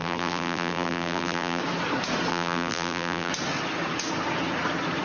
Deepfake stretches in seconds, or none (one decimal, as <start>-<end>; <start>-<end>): 0.0-1.6; 2.3-3.3

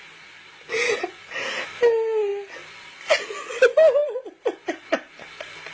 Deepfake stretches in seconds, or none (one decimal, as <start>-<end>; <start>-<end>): none